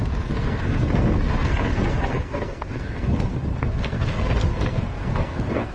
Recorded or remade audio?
remade